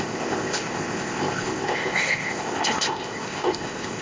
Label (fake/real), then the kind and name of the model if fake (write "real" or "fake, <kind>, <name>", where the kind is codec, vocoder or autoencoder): fake, codec, ZipCodec